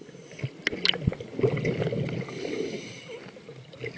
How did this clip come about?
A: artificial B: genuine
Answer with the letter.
B